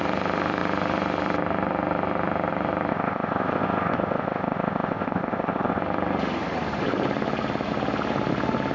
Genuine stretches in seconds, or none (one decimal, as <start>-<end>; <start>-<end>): 0.0-2.9; 5.8-8.7